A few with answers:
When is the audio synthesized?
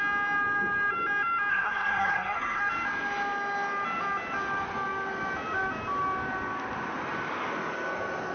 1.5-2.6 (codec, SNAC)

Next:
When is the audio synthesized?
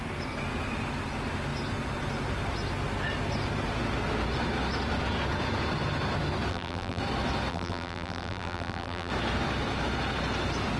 6.5-7.0 (vocoder, BigVGAN v2); 7.5-9.1